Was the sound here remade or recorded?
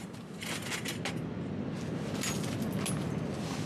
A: recorded